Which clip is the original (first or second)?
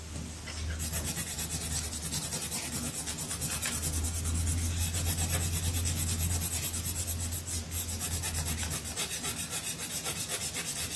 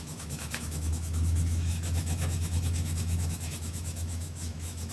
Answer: first